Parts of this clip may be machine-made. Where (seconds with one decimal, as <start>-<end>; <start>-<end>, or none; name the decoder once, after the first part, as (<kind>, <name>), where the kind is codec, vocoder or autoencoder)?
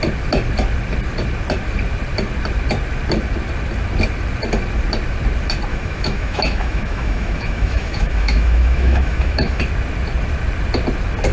5.7-9.6 (autoencoder, DAC-VAE)